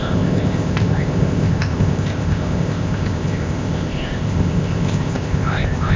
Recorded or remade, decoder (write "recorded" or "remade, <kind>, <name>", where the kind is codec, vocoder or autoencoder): remade, codec, ZipCodec